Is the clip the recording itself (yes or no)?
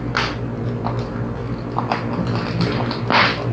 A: yes